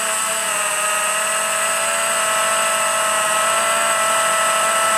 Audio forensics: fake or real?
real